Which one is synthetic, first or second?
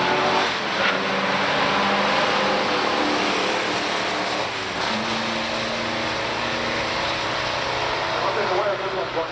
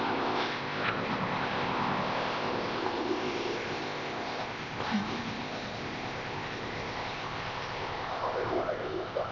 second